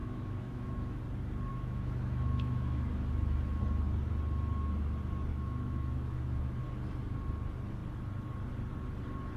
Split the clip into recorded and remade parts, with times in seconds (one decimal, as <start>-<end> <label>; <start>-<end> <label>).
0.0-1.0 remade; 1.0-1.5 recorded; 1.5-3.6 remade; 3.6-5.3 recorded; 5.3-6.6 remade; 6.6-9.4 recorded